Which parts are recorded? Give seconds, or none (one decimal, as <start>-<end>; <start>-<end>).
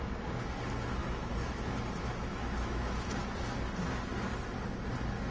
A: 0.0-1.0; 1.8-2.2; 3.2-5.3